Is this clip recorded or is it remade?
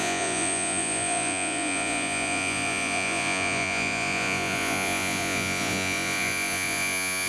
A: remade